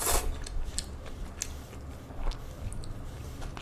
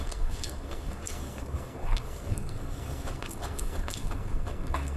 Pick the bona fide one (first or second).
first